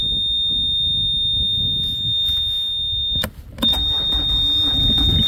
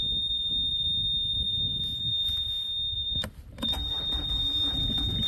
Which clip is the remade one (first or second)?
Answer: second